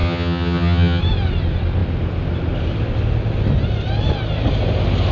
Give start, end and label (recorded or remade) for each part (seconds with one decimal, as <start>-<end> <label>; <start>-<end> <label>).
0.0-1.0 remade; 1.0-5.1 recorded